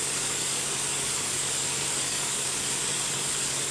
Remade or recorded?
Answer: remade